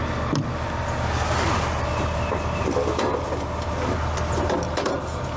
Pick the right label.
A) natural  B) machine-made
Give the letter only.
A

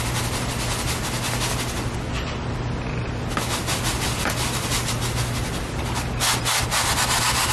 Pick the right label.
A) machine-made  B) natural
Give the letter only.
B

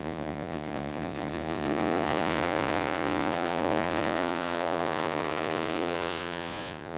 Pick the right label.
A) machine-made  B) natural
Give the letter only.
A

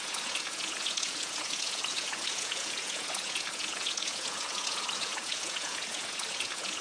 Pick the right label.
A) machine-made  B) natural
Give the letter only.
A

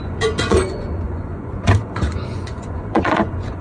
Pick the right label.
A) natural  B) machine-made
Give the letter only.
B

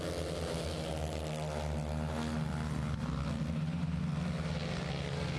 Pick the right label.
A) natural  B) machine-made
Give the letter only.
A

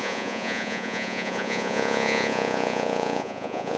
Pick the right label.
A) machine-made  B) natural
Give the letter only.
A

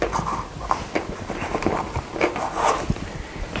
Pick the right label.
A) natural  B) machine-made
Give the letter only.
A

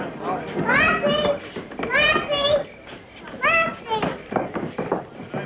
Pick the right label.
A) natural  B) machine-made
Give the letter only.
A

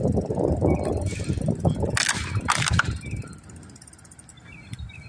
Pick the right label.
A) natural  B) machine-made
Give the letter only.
A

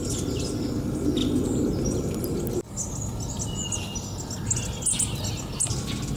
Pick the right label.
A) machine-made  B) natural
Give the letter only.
B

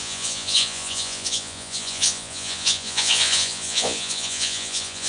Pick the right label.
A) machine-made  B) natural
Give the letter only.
A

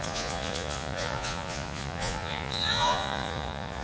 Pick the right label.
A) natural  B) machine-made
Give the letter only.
B